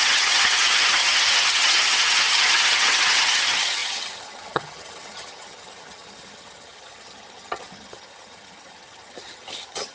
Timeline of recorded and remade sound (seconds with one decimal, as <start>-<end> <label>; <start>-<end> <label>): 0.0-9.9 remade